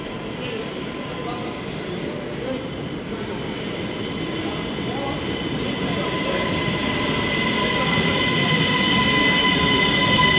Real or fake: real